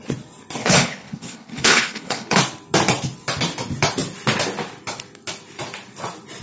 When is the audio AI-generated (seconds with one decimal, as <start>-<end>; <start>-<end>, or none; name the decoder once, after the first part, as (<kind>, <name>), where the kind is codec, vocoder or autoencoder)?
0.6-2.4 (codec, HILCodec)